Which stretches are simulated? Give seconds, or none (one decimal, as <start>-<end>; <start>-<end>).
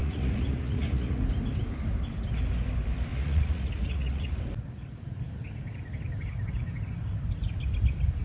0.0-1.2; 3.1-4.3